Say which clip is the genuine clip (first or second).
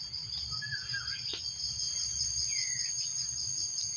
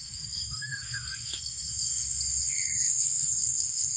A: first